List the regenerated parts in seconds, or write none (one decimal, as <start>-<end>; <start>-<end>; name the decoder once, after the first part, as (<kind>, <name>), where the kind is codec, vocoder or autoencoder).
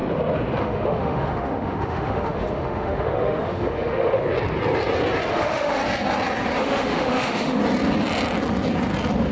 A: 0.6-4.2 (autoencoder, DAC-VAE); 5.3-5.8; 6.6-7.6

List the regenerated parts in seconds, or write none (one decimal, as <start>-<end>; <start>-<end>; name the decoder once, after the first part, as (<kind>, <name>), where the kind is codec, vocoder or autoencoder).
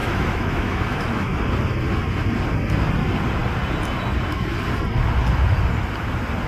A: 0.0-1.4 (autoencoder, DAC-VAE)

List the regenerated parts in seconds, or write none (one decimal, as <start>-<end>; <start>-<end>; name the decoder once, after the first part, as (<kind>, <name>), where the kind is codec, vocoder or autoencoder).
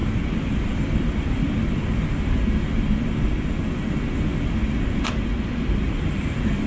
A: none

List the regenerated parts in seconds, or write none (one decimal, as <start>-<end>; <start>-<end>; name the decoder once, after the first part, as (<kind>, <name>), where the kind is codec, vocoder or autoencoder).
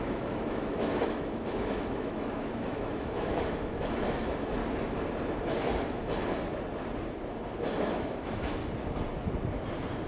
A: 0.0-4.6 (autoencoder, DAC-VAE); 7.8-8.6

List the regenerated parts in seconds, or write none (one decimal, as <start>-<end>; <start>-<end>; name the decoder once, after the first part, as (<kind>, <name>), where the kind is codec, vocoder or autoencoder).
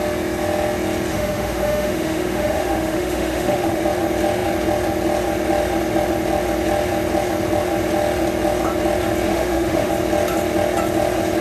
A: 1.1-3.8 (autoencoder, DAC-VAE); 9.3-9.9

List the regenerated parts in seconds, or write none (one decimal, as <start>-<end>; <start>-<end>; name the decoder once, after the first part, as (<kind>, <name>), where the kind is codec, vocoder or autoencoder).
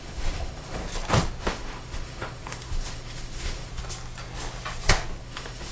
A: 0.0-0.8 (autoencoder, DAC-VAE); 1.4-3.7; 5.2-5.7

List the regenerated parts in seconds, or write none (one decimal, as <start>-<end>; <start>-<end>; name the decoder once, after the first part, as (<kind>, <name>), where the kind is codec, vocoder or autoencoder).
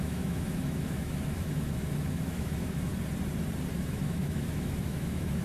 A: 0.0-2.9 (autoencoder, DAC-VAE); 3.8-5.4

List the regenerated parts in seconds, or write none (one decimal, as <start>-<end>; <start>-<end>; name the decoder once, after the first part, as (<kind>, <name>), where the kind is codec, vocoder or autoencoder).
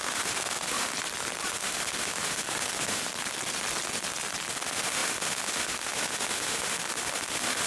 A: 0.0-0.9 (autoencoder, DAC-VAE); 1.5-3.0; 4.5-7.7